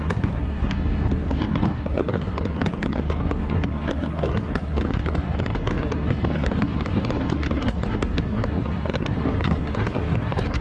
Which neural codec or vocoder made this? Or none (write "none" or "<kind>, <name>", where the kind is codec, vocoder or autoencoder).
codec, SNAC